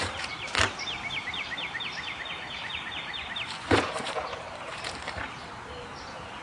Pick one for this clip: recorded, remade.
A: remade